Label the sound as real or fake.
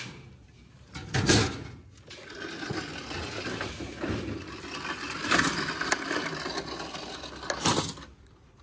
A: real